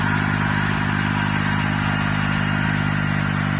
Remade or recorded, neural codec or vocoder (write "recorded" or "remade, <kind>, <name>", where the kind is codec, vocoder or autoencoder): recorded